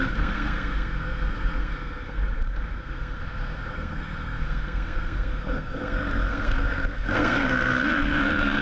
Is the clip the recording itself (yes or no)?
no